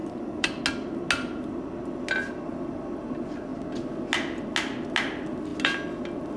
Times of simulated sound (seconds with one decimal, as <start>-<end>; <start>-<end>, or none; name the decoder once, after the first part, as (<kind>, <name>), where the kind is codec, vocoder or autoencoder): 0.0-0.6 (vocoder, BigVGAN v2)